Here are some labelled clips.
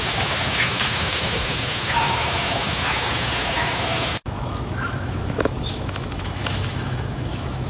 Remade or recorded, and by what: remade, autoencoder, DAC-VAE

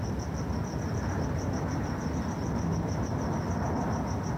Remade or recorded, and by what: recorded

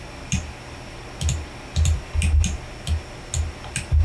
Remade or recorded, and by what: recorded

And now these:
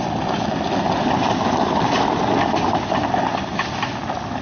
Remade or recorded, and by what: recorded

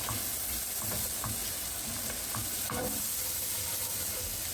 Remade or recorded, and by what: recorded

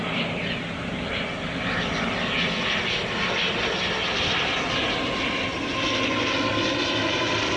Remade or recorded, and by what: recorded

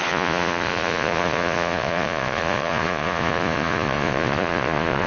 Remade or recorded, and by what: remade, vocoder, Vocos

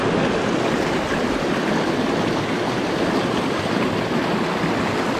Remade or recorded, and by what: recorded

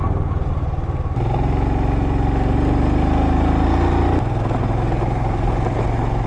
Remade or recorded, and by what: recorded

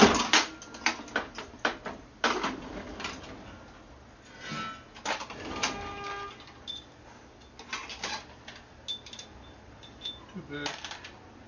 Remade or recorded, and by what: recorded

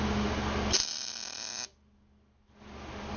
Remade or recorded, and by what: recorded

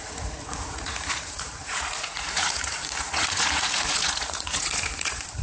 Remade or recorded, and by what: remade, vocoder, Vocos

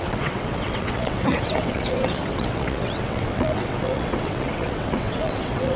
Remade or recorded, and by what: remade, vocoder, WaveNeXt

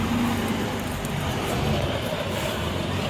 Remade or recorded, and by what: remade, vocoder, BigVGAN v2